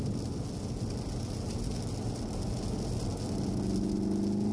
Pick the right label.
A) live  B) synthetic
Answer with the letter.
A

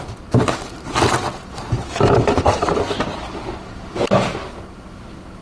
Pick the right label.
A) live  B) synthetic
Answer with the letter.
A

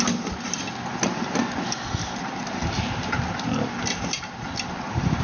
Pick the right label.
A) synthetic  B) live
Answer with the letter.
B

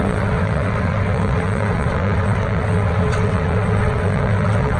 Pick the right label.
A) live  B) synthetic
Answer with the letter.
B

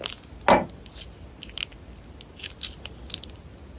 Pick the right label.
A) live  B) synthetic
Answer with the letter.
A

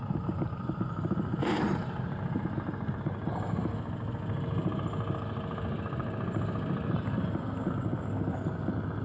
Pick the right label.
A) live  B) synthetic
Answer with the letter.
A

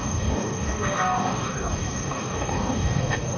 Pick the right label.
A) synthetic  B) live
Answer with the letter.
A